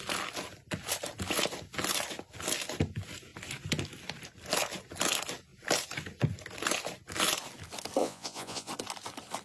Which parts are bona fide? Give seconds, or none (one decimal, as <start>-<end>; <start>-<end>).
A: 0.0-8.0; 8.7-9.4

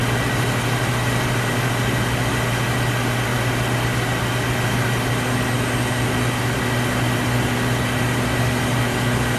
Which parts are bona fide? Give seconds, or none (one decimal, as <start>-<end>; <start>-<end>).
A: 0.0-9.4

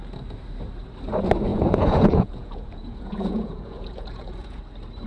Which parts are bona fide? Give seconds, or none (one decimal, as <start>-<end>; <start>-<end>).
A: 0.0-1.5; 4.6-5.1

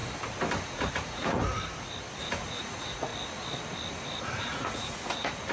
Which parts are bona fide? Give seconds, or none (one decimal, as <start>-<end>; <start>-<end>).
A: 0.0-0.6; 1.4-2.2; 3.1-4.4

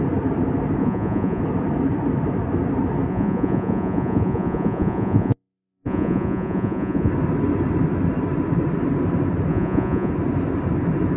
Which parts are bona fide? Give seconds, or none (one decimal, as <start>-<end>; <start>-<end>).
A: 0.0-0.8; 1.4-3.1; 7.1-9.5; 10.1-11.2

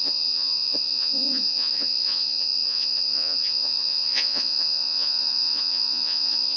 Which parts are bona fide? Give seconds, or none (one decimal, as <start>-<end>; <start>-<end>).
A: none